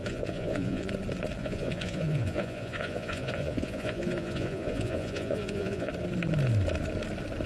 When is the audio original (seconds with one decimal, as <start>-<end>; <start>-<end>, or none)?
0.9-1.4; 5.9-7.5